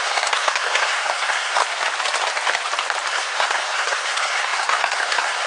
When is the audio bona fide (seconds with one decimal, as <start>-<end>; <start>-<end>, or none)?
1.6-3.1